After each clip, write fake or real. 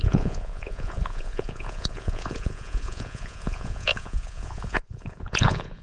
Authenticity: fake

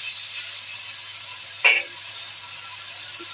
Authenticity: real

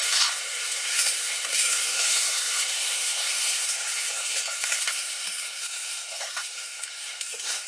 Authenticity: fake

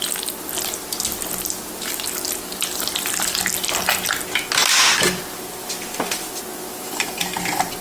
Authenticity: real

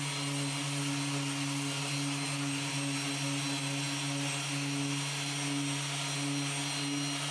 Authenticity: real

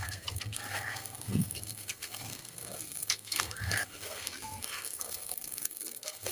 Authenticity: fake